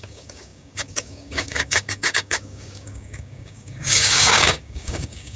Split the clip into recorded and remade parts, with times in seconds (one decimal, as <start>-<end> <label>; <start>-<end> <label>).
0.0-5.4 remade